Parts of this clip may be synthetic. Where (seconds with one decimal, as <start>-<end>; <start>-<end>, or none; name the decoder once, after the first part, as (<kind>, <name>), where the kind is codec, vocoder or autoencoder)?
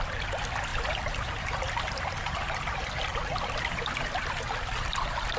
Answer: 0.7-3.9 (vocoder, BigVGAN v2)